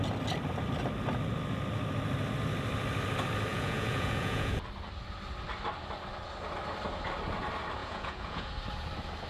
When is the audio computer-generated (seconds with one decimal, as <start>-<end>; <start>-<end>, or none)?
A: 3.5-4.6; 7.8-8.5